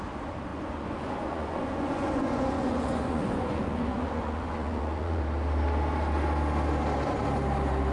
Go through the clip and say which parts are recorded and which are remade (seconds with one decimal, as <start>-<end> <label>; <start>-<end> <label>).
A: 0.0-0.5 recorded; 0.5-5.2 remade; 5.2-7.9 recorded